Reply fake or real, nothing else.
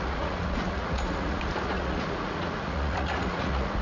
fake